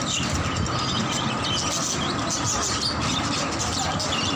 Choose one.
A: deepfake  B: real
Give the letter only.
B